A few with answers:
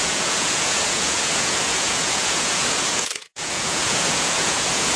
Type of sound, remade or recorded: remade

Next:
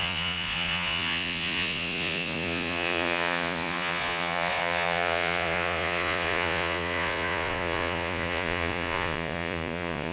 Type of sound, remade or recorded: remade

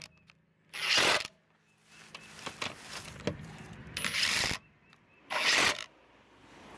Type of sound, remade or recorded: recorded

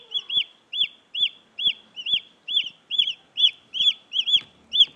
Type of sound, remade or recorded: recorded